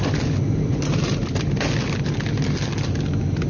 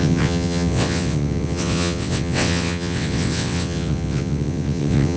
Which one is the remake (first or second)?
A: second